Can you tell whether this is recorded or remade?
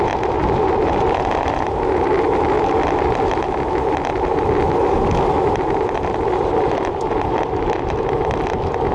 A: recorded